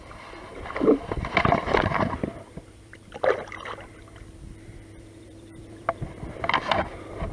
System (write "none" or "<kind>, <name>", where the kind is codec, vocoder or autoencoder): vocoder, BigVGAN v2